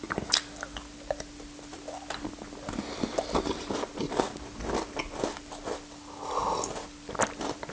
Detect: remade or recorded recorded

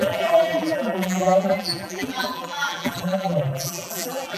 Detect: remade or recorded remade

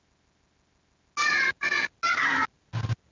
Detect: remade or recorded recorded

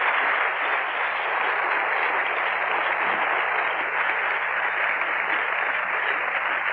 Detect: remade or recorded recorded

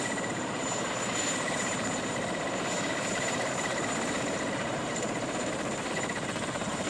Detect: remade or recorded remade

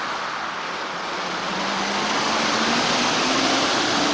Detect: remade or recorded recorded